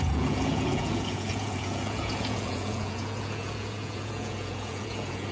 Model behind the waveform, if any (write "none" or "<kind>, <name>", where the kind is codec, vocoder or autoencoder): vocoder, Vocos